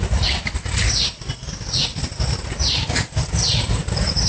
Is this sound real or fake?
real